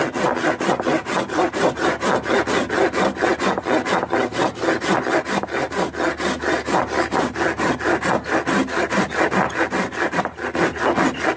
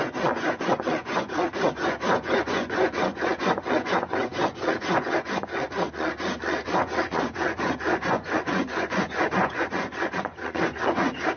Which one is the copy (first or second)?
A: second